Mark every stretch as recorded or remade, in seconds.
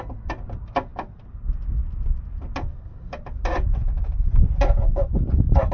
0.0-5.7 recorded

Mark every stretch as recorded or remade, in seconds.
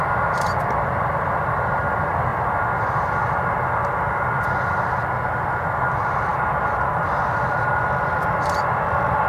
0.0-9.3 recorded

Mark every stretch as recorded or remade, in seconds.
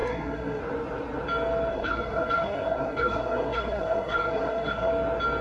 0.0-0.6 remade; 0.6-1.7 recorded; 1.7-4.9 remade; 4.9-5.4 recorded